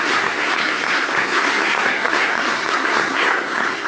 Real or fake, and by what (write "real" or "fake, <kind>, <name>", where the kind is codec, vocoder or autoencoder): fake, codec, SNAC